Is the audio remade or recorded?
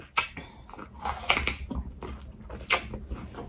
recorded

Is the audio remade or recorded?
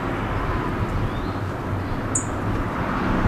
recorded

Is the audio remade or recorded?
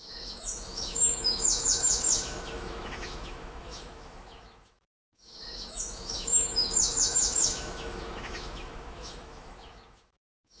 remade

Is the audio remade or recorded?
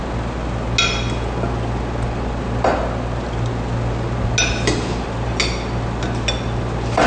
recorded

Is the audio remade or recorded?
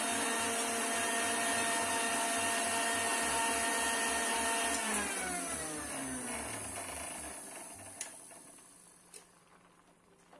recorded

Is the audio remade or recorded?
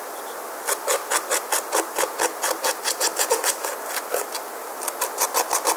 recorded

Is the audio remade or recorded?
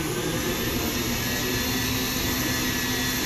recorded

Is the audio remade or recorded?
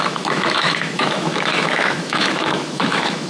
remade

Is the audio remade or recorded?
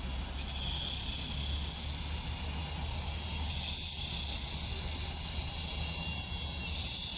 recorded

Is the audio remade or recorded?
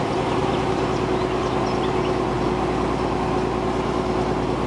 recorded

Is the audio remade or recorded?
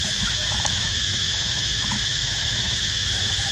remade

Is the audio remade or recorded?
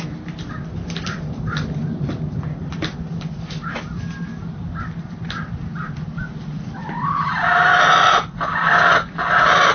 recorded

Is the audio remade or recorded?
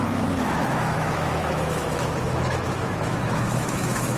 remade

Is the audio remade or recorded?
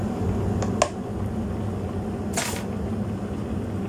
recorded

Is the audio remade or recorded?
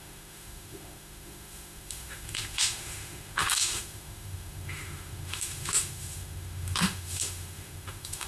remade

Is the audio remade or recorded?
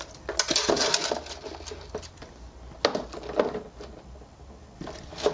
recorded